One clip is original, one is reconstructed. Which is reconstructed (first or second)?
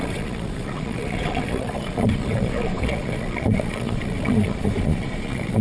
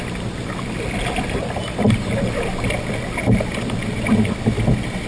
first